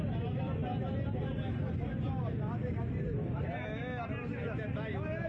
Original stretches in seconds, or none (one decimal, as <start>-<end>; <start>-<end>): 0.0-2.6; 3.4-5.3